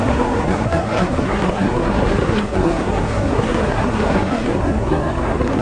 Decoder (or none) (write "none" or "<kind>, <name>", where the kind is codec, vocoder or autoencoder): codec, SNAC